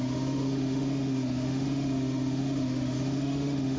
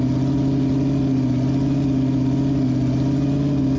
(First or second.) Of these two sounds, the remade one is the first